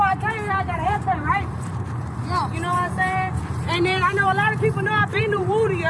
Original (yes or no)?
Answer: no